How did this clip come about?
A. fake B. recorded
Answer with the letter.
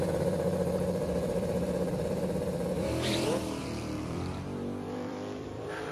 A